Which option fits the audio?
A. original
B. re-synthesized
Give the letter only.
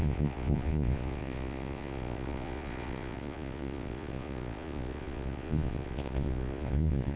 B